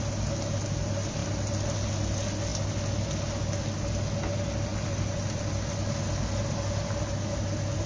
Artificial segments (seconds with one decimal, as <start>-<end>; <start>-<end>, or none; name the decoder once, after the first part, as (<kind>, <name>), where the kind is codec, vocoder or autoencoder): none